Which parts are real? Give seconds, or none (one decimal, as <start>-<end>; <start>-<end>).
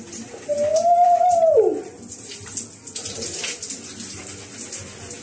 0.0-5.2